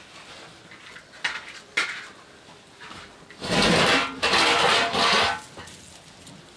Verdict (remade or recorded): recorded